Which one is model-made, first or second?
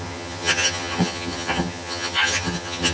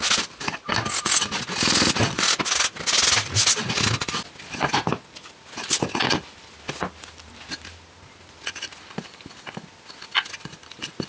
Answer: first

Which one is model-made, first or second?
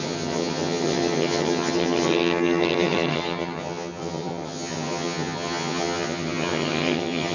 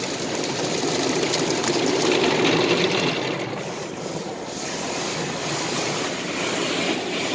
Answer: first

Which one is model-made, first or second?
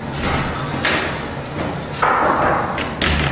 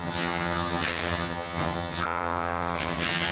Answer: second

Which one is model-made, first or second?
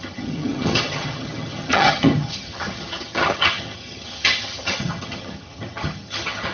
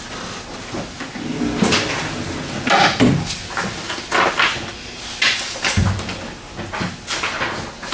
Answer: first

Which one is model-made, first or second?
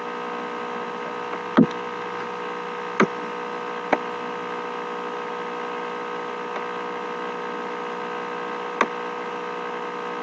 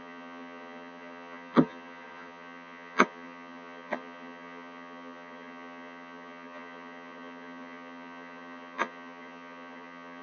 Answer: second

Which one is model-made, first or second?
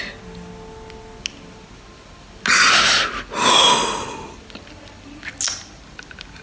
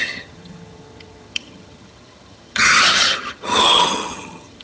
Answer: second